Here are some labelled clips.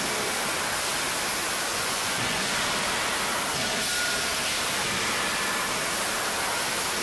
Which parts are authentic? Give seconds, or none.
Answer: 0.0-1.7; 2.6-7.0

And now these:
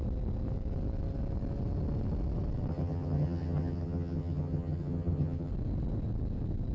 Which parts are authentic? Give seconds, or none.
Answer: 0.0-2.7; 5.5-6.7

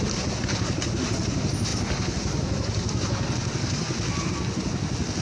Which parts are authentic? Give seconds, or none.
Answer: 0.0-5.2